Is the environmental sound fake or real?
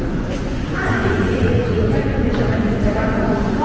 fake